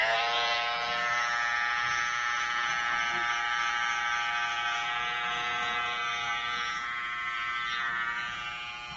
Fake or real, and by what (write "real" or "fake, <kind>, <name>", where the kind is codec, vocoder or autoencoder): real